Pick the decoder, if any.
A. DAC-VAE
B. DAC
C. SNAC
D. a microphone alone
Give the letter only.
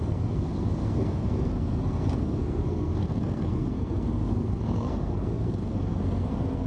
C